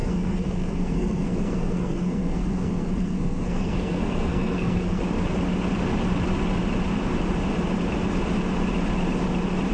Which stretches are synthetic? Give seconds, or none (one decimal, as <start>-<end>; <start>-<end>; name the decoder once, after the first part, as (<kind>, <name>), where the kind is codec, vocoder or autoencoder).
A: 0.0-5.0 (codec, SNAC)